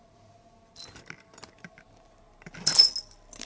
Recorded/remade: recorded